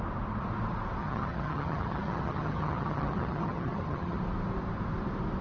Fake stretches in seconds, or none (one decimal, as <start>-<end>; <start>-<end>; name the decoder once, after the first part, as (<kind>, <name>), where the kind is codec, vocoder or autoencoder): 1.0-4.2 (vocoder, HiFi-GAN)